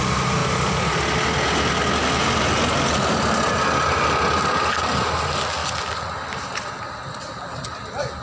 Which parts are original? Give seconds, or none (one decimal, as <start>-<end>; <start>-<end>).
0.0-8.2

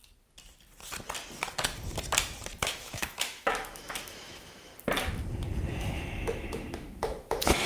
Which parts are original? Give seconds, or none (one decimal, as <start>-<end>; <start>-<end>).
0.0-2.6; 4.7-5.8

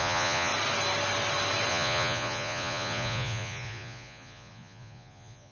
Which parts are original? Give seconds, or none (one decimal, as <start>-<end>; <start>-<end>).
0.5-1.7

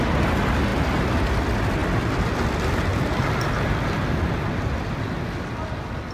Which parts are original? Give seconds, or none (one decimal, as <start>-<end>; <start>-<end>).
0.0-6.1

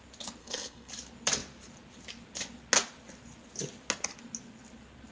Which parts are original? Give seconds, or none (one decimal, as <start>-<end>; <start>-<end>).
0.0-0.4; 0.9-5.1

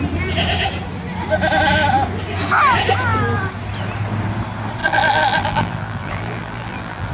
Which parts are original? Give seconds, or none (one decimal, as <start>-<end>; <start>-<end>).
0.0-4.8

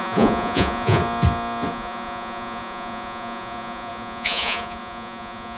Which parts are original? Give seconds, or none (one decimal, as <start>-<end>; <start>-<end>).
1.0-1.7

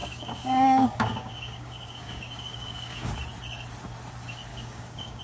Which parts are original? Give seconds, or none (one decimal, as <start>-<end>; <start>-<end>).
3.1-4.5